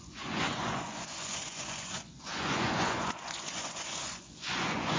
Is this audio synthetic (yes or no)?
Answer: yes